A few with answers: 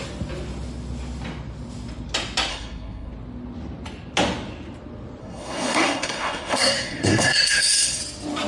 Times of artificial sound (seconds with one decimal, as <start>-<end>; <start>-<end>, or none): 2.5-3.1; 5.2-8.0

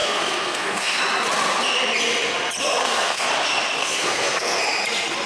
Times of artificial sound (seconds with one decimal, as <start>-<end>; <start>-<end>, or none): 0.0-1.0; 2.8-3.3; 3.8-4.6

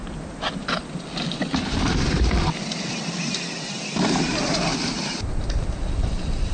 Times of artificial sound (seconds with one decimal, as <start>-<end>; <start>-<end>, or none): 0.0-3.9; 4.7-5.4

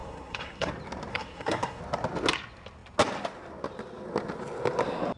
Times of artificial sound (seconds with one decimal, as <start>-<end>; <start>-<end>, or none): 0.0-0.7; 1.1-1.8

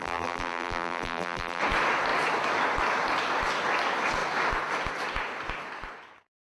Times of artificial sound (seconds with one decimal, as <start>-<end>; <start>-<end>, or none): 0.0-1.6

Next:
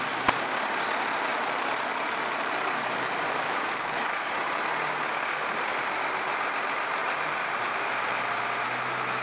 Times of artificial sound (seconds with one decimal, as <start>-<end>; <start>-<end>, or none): 1.3-4.6; 7.0-8.4